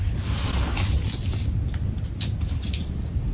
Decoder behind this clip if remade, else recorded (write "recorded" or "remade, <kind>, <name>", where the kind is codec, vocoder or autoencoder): recorded